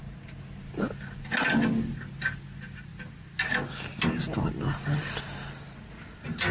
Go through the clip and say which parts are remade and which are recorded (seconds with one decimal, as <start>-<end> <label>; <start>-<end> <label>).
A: 0.0-6.5 recorded